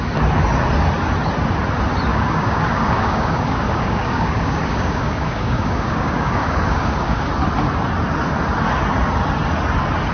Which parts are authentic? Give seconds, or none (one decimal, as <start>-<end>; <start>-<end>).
0.0-2.1; 7.3-10.1